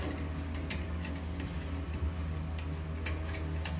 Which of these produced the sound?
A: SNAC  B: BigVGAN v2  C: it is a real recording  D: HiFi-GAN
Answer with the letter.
C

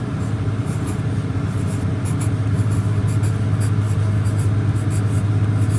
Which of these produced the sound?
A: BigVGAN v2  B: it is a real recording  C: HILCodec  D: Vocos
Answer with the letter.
B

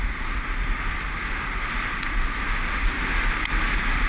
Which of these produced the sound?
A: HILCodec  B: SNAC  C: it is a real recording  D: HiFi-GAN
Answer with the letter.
C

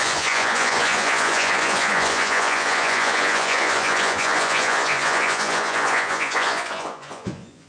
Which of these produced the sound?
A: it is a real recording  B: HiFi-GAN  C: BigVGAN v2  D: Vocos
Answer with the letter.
D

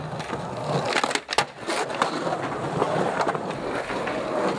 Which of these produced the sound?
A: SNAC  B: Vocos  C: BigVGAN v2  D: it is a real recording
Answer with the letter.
D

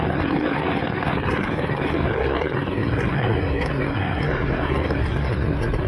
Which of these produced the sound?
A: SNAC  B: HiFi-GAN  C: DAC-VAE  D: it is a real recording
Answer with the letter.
A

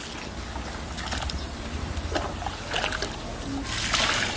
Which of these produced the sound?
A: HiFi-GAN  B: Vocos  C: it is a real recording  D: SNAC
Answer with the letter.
C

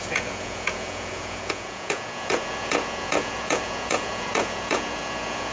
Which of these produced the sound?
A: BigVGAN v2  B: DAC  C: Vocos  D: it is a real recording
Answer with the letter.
C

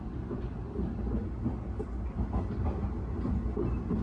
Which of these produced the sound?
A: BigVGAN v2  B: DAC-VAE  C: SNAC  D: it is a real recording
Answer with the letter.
D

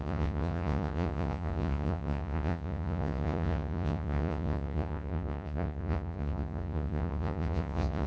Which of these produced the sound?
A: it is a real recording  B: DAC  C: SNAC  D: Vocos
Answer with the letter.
D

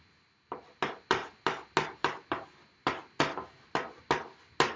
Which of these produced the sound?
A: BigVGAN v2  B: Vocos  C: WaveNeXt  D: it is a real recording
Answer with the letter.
D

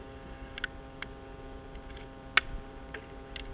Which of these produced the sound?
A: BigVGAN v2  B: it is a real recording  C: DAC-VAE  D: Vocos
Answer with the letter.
B